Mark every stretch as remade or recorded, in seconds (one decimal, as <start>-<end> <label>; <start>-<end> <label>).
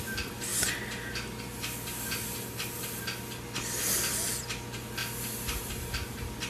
0.0-6.5 recorded